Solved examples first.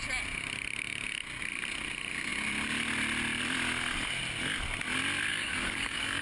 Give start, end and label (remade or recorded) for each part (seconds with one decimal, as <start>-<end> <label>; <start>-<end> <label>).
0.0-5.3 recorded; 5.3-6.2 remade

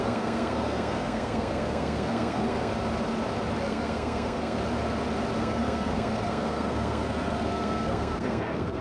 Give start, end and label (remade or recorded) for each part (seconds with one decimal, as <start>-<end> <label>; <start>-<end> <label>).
0.0-2.7 remade; 2.7-3.6 recorded; 3.6-4.6 remade; 4.6-5.4 recorded; 5.4-8.8 remade

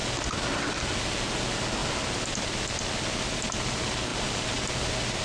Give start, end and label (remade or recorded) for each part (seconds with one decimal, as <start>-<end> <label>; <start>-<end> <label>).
0.0-5.2 recorded

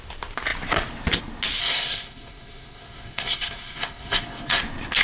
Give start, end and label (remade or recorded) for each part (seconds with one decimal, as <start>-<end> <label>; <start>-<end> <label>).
0.0-1.6 recorded; 1.6-4.6 remade; 4.6-5.0 recorded

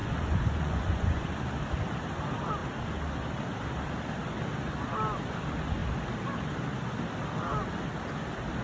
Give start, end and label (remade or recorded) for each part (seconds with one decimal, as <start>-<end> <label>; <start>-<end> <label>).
0.0-1.3 remade; 1.3-8.6 recorded